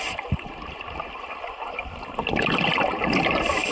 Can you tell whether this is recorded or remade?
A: remade